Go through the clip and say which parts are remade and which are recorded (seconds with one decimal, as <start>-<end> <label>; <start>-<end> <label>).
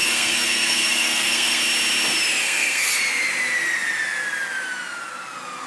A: 0.0-1.6 remade; 1.6-2.4 recorded; 2.4-2.9 remade; 2.9-5.7 recorded